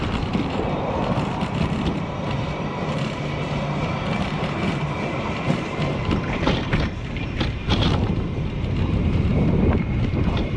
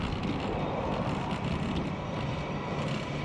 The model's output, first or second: first